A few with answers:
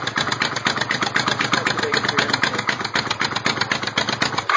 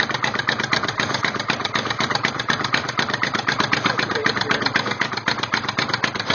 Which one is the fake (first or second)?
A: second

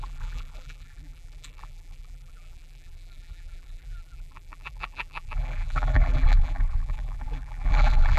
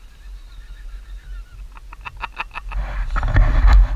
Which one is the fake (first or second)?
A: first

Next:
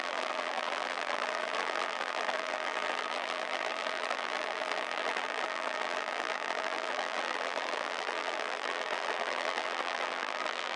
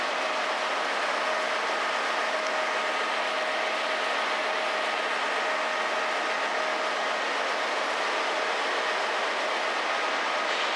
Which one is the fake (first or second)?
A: first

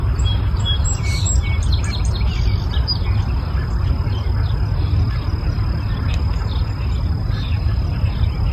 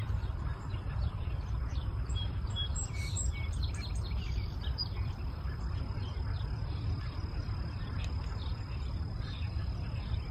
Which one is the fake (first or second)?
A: second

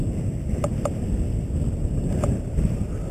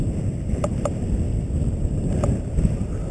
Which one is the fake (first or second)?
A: second